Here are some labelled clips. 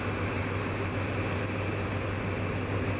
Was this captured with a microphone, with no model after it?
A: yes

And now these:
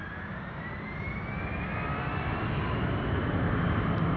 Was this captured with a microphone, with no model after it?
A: yes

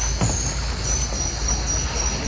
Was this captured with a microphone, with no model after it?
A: yes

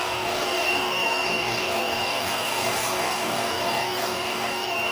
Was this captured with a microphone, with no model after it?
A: no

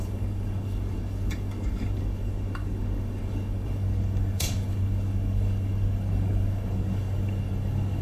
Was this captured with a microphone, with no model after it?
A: no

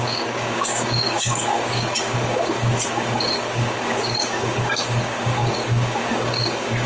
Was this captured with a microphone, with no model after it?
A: no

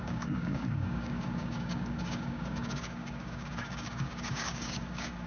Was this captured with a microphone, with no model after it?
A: no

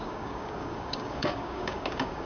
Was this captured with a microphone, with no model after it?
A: no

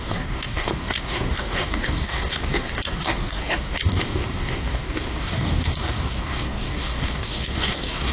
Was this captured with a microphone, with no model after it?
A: no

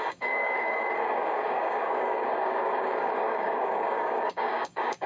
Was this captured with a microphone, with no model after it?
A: no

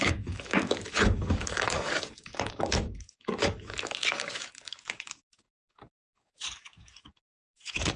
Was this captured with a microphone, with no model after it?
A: no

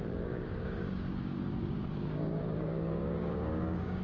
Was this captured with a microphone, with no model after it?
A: no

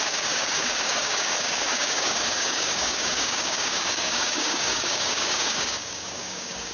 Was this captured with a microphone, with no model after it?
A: no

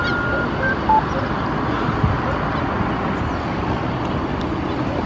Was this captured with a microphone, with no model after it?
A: yes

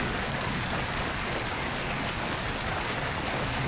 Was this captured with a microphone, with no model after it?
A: no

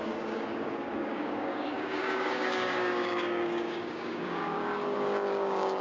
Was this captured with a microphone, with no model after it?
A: no